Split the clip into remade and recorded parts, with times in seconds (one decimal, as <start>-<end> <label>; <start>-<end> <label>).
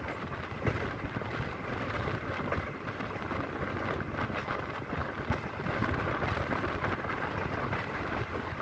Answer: 0.0-8.6 recorded